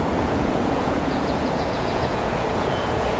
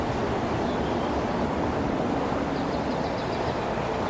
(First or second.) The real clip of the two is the second